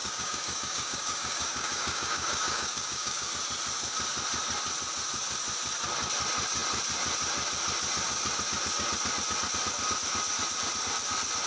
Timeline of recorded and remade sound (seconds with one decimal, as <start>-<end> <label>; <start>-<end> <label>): 0.0-3.3 remade; 3.3-11.5 recorded